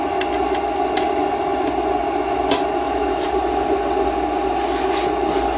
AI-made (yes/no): no